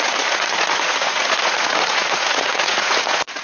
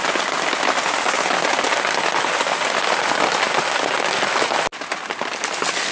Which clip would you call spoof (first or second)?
first